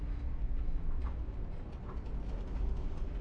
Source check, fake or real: real